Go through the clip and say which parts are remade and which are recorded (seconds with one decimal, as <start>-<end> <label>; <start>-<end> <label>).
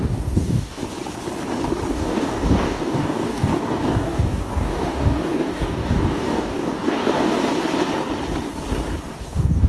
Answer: 0.0-0.8 remade; 0.8-1.9 recorded; 1.9-7.4 remade; 7.4-9.2 recorded; 9.2-9.7 remade